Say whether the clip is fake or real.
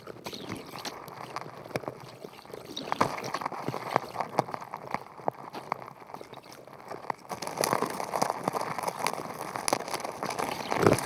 real